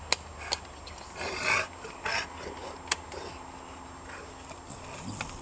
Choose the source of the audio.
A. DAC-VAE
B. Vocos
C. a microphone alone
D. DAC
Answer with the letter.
C